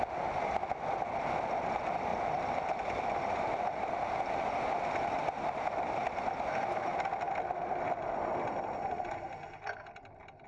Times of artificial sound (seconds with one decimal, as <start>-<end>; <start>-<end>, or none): none